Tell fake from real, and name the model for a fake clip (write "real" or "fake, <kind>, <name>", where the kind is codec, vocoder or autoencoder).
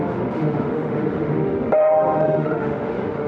fake, autoencoder, DAC-VAE